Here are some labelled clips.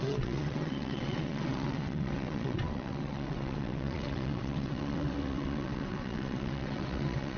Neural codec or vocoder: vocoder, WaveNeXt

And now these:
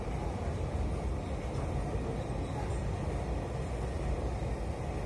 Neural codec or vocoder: none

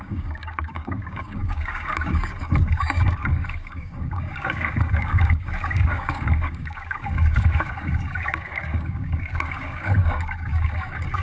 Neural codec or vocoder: codec, DAC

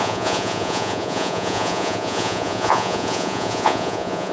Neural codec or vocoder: vocoder, Vocos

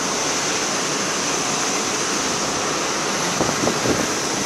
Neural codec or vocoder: none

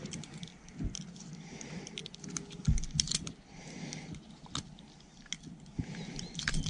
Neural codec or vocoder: none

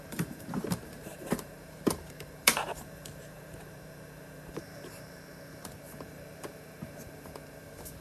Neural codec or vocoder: vocoder, BigVGAN v2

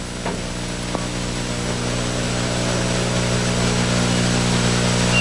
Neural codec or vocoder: none